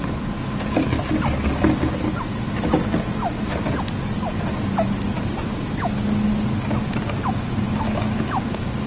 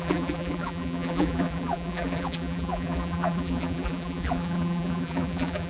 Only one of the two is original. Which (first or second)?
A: first